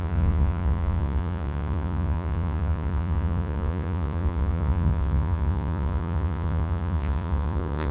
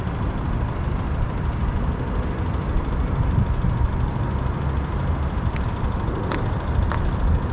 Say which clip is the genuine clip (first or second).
second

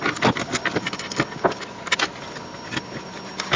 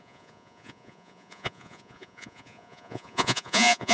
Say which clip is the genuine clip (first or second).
first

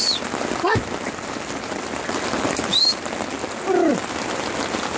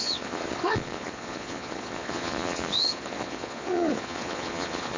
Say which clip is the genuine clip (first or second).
first